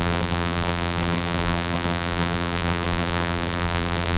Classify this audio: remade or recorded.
remade